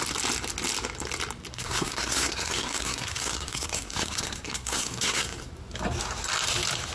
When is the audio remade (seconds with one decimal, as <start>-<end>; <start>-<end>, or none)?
1.5-5.5